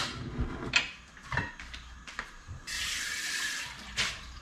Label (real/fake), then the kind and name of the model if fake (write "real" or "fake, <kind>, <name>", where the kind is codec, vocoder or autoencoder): fake, vocoder, BigVGAN v2